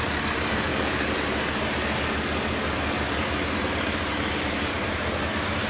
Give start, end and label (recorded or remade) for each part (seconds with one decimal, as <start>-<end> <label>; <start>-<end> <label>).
0.0-0.7 remade; 0.7-4.1 recorded; 4.1-5.7 remade